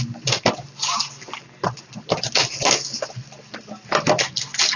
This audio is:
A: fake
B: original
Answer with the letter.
B